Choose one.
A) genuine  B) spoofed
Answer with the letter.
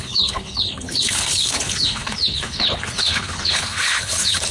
B